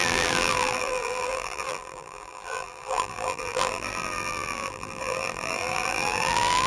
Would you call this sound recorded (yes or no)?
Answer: no